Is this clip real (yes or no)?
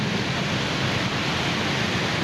yes